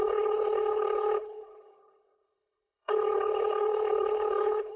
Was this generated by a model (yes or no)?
yes